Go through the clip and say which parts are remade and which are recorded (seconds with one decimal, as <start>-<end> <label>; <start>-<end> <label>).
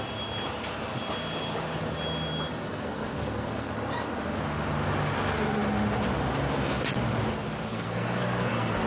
0.0-2.7 recorded; 2.7-3.7 remade; 3.7-7.7 recorded; 7.7-8.9 remade